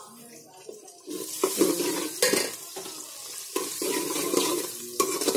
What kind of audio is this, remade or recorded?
recorded